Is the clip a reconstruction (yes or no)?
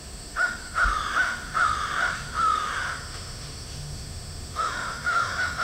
yes